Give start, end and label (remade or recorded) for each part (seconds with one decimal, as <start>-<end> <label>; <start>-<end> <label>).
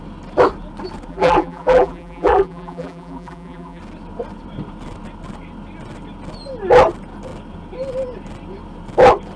0.0-1.1 recorded; 1.1-3.8 remade; 3.8-9.4 recorded